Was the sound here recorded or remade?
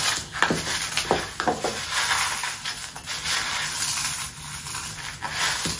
recorded